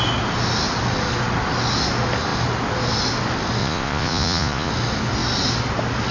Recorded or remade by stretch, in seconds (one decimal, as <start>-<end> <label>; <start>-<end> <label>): 0.0-3.6 recorded; 3.6-4.7 remade; 4.7-6.1 recorded